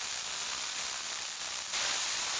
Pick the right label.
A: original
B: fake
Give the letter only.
A